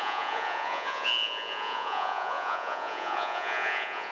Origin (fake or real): fake